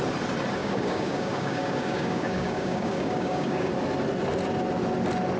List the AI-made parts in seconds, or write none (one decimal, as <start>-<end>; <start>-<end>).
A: 0.6-3.7